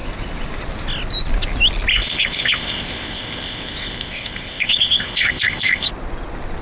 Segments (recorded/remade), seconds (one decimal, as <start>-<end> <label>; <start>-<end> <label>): 0.0-1.9 recorded; 1.9-5.9 remade; 5.9-6.6 recorded